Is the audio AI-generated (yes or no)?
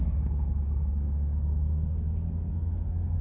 yes